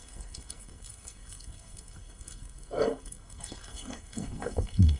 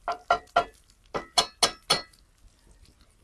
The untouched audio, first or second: second